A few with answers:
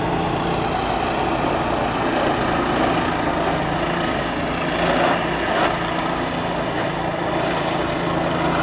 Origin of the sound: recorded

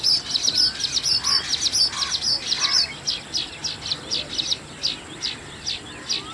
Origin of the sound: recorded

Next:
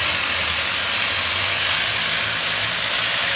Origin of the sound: recorded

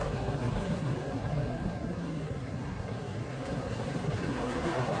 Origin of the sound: remade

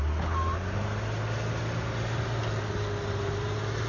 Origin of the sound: recorded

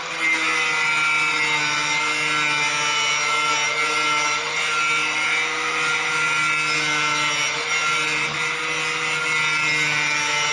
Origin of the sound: recorded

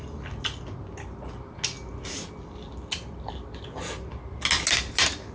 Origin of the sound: recorded